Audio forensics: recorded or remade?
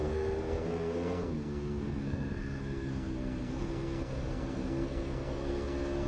remade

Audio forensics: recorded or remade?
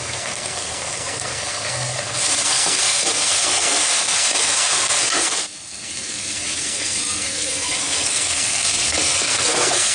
remade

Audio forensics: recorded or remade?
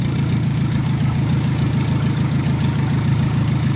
remade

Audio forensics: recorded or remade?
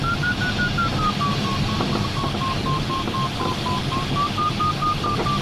recorded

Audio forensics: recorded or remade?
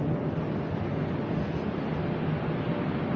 recorded